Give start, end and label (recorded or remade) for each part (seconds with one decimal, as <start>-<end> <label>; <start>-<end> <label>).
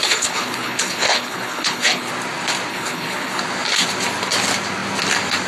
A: 0.0-2.1 remade; 2.1-2.7 recorded; 2.7-3.4 remade; 3.4-5.5 recorded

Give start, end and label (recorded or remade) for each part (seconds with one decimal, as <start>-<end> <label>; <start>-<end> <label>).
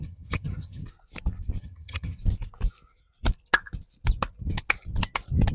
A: 0.0-0.8 remade; 0.8-1.6 recorded; 1.6-2.2 remade; 2.2-5.5 recorded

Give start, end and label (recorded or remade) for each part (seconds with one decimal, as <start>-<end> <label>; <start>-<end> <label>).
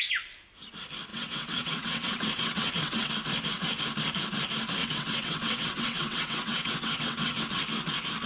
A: 0.0-1.1 recorded; 1.1-3.1 remade; 3.1-4.8 recorded; 4.8-7.4 remade; 7.4-8.3 recorded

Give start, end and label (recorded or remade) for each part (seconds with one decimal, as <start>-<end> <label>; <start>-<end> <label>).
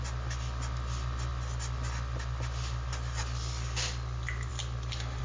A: 0.0-5.2 recorded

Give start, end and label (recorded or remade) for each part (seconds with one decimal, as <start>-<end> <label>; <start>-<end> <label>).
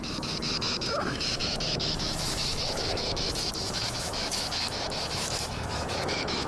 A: 0.0-6.5 remade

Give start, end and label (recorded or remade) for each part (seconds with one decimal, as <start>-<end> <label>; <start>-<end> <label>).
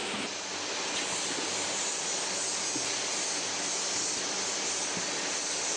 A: 0.0-5.8 recorded